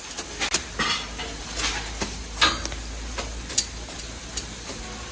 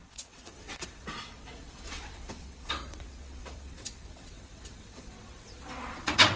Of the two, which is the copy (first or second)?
second